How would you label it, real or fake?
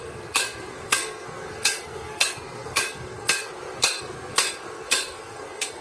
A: fake